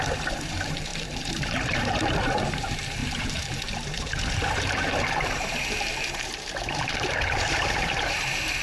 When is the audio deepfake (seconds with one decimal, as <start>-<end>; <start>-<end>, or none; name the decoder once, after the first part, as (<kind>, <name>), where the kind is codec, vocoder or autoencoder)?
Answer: 0.0-8.6 (vocoder, BigVGAN v2)